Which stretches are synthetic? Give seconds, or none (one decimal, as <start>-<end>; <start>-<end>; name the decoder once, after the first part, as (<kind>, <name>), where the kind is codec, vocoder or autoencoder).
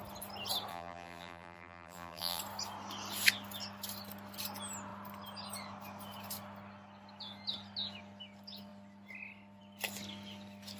0.7-2.4 (vocoder, BigVGAN v2)